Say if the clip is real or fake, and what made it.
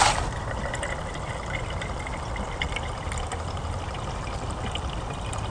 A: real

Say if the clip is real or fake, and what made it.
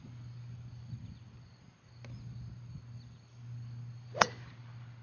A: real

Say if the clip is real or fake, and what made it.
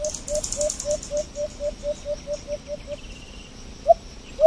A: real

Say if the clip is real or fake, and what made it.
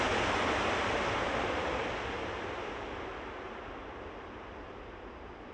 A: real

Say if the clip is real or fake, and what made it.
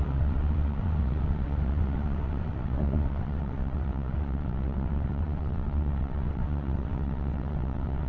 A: fake, vocoder, WaveNeXt